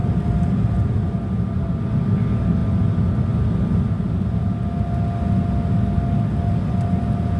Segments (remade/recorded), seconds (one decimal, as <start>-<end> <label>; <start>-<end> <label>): 0.0-7.4 recorded